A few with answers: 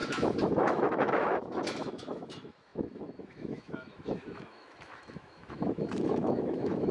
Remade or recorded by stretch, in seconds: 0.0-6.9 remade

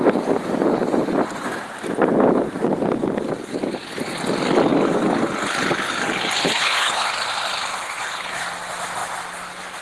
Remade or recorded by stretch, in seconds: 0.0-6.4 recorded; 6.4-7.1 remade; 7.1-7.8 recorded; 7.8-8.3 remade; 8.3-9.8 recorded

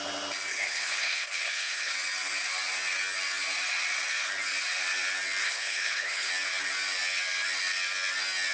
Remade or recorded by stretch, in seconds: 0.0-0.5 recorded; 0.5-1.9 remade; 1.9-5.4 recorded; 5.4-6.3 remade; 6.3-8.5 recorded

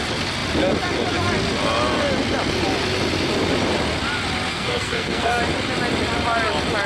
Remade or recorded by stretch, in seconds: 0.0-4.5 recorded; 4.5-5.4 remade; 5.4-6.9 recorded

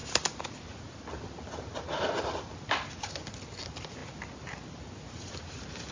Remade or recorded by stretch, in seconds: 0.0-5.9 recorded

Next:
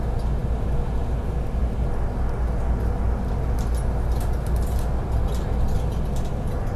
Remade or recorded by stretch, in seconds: 0.0-6.8 recorded

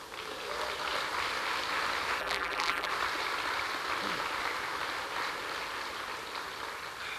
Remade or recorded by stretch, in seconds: 0.0-2.2 recorded; 2.2-2.9 remade; 2.9-7.2 recorded